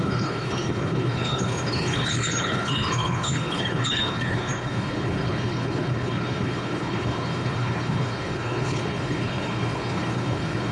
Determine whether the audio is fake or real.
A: fake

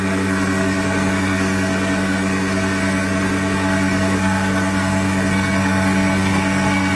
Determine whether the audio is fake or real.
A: fake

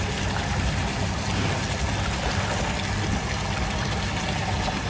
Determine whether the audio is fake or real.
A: real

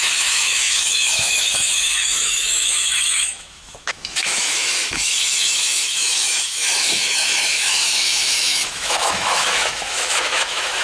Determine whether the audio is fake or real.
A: fake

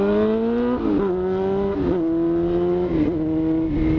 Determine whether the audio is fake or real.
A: real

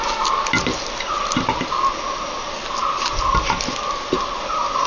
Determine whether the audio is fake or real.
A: real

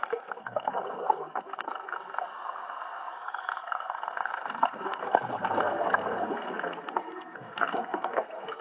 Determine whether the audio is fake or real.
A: fake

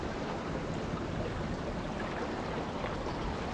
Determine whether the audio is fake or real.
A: real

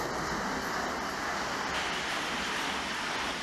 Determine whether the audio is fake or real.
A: real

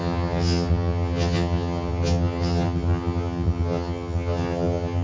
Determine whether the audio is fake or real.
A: fake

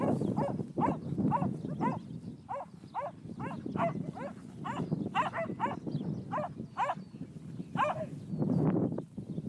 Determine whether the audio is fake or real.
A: real